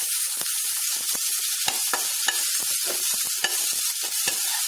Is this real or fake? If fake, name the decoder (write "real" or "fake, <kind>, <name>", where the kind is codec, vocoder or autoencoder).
fake, vocoder, BigVGAN v2